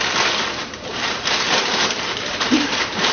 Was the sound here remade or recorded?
remade